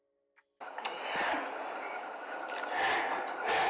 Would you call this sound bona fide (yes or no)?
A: yes